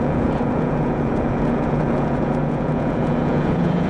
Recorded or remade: remade